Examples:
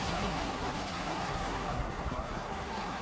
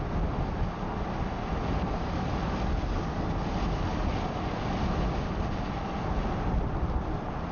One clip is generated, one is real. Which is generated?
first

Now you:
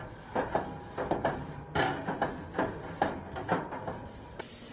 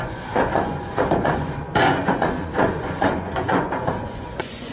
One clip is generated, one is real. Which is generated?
second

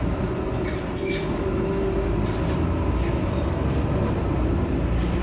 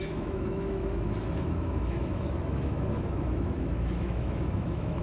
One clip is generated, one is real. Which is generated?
second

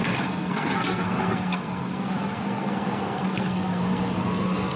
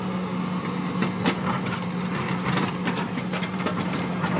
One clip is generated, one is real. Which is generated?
first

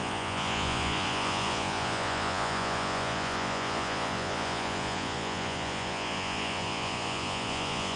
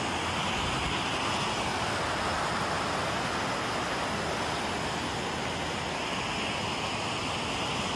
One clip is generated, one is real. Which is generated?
first